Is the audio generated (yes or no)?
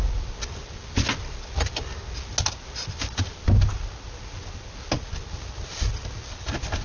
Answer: no